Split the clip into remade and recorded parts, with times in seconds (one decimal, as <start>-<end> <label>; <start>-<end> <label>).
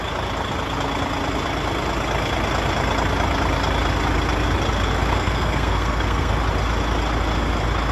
0.0-5.1 recorded; 5.1-6.3 remade; 6.3-7.9 recorded